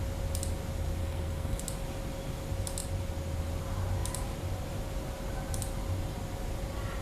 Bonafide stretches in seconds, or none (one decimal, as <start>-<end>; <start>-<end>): 0.0-1.0; 1.6-7.0